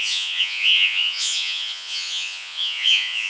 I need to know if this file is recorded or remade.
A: remade